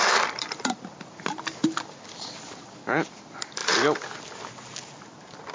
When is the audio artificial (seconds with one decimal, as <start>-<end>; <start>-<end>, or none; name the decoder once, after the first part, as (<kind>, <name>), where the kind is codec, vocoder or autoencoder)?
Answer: 0.0-3.6 (vocoder, BigVGAN v2); 4.2-5.5